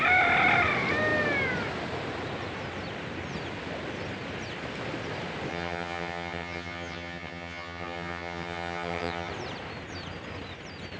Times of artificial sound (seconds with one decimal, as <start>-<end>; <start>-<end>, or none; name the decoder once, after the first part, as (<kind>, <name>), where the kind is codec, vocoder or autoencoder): 5.5-9.3 (vocoder, HiFi-GAN)